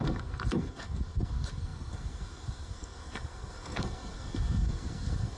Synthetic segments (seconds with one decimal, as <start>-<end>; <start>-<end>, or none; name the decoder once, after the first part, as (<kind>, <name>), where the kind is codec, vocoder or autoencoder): 0.0-5.4 (codec, SNAC)